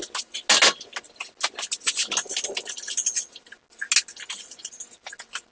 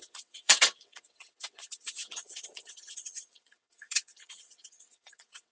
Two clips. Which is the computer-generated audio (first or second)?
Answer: second